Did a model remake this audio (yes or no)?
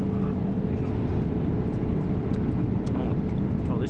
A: no